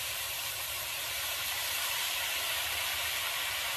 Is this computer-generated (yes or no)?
yes